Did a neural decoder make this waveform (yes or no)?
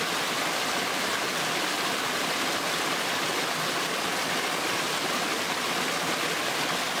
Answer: no